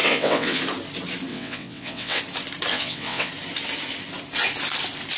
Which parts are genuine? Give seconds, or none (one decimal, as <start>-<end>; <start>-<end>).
0.6-1.3; 2.2-2.7; 3.3-5.2